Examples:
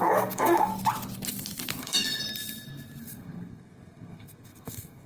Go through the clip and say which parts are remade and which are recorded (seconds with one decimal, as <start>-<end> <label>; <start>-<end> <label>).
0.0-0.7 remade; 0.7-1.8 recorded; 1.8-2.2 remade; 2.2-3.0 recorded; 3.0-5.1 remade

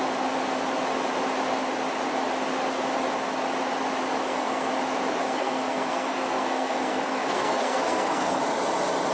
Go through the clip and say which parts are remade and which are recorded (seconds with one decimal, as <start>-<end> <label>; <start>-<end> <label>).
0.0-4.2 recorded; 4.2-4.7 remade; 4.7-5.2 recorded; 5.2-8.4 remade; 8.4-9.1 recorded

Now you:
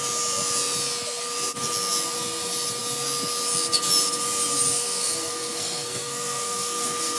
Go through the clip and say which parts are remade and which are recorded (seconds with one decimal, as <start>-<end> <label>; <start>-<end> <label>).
0.0-4.7 recorded; 4.7-7.2 remade

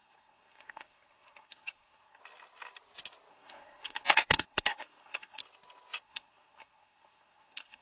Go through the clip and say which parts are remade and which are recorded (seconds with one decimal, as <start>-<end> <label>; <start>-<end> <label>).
0.0-2.2 remade; 2.2-3.3 recorded; 3.3-5.4 remade; 5.4-6.0 recorded; 6.0-7.8 remade